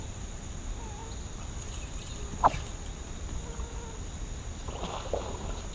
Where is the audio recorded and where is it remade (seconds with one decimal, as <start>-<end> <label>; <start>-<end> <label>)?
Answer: 0.0-5.7 recorded